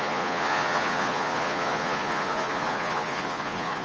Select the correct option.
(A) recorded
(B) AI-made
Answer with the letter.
B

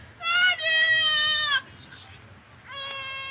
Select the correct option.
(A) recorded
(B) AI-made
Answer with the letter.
A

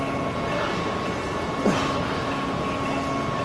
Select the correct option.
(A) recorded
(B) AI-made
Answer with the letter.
A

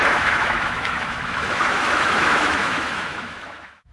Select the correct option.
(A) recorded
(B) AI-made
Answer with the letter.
B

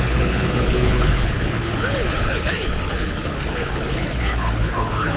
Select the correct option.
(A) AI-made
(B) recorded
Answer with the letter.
A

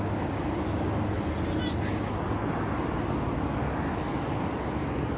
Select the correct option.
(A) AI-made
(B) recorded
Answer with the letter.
B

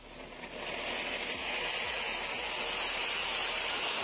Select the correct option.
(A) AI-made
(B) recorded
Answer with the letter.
B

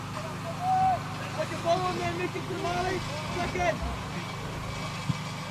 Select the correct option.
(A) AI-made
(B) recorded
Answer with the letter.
B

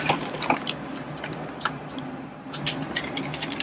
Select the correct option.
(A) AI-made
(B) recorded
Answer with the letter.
A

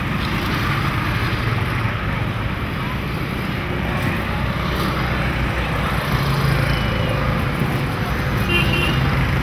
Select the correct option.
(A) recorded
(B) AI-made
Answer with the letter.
A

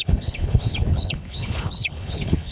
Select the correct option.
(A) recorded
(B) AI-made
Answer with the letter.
B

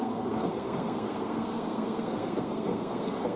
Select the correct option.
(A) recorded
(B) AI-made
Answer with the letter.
B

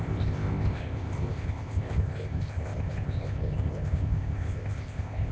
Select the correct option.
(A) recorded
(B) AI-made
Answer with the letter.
B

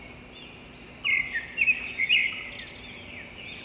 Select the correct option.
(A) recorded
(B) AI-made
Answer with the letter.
A